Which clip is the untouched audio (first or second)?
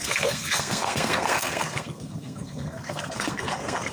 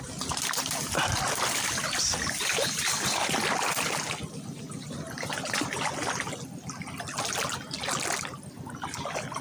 second